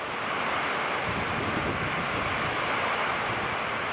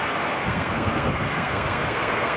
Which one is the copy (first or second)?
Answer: second